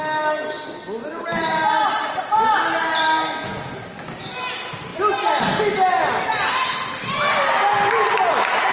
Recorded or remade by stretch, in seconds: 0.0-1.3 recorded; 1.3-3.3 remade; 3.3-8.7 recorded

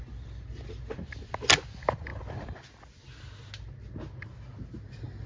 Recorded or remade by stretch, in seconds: 0.0-5.3 recorded

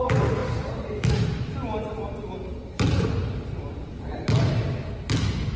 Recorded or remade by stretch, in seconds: 0.0-5.6 recorded

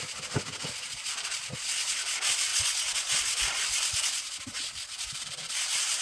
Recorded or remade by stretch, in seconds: 0.0-2.5 remade; 2.5-3.4 recorded; 3.4-6.0 remade

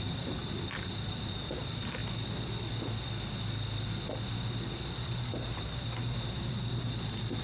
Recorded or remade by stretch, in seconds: 0.0-2.0 remade; 2.0-4.7 recorded; 4.7-7.4 remade

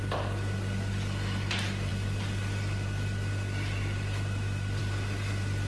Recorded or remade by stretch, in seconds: 0.0-5.7 recorded

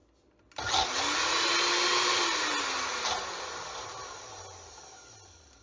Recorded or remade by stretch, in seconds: 0.0-3.4 recorded; 3.4-5.6 remade